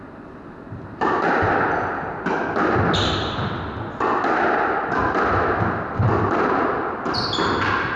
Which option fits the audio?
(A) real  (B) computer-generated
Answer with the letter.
A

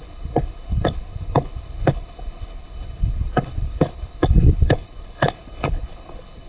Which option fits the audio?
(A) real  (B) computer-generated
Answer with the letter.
B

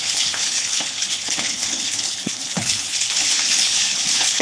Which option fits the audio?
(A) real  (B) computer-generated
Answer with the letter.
B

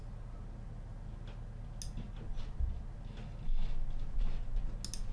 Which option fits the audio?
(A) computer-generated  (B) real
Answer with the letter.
B